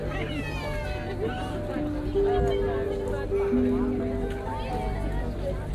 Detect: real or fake real